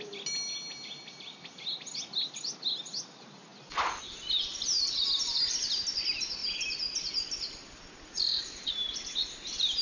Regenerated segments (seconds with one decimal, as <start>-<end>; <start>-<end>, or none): none